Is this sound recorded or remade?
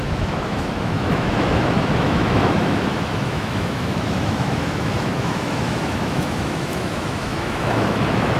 remade